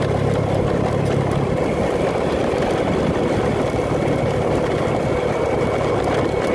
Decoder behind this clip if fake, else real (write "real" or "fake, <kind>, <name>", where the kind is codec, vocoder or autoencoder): real